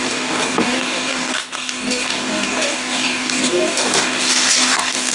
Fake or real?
fake